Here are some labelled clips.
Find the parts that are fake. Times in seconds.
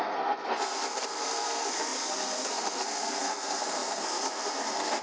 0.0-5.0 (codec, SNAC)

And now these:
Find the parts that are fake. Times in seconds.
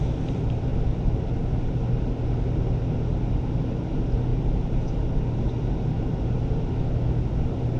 none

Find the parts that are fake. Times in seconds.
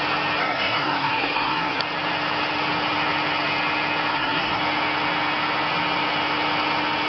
0.4-1.8 (codec, SNAC); 4.1-4.6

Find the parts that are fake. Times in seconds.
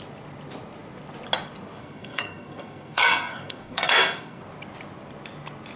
1.8-4.4 (codec, SNAC)